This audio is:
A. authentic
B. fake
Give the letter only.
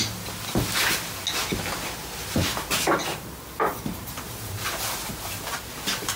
A